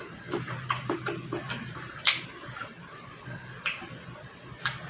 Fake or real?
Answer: real